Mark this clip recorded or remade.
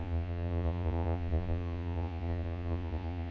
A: remade